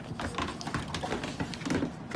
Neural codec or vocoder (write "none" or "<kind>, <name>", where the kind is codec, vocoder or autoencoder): none